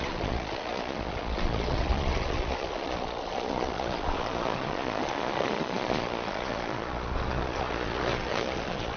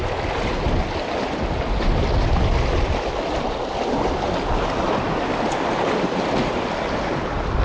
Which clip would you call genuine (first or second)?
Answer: second